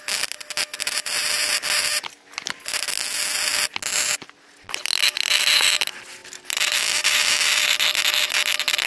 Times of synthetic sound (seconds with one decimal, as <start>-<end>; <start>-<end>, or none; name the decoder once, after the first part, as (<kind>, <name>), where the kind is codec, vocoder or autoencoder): 6.2-7.3 (vocoder, BigVGAN v2)